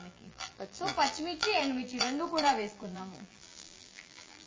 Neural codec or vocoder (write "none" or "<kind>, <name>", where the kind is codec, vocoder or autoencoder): vocoder, BigVGAN v2